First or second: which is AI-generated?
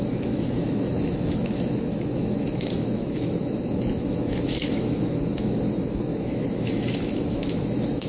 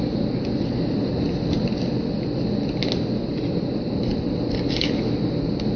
first